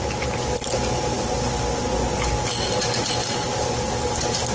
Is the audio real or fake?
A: real